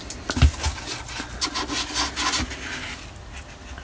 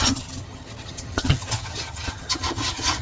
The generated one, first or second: second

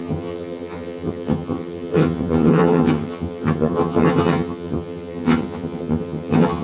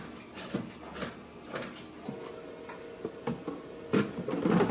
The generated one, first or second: first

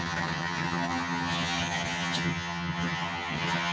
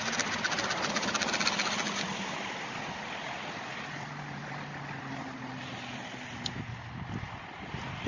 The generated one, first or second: first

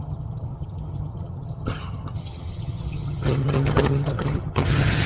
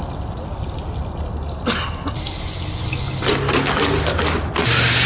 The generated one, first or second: first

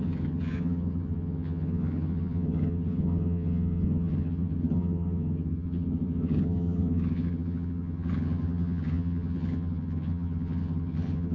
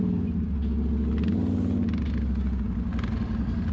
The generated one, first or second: first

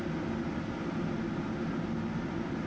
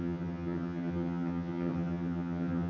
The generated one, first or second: second